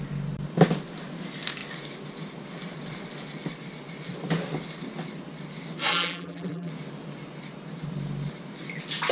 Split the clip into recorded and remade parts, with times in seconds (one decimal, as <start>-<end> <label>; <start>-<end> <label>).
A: 0.0-5.9 recorded; 5.9-6.7 remade; 6.7-9.1 recorded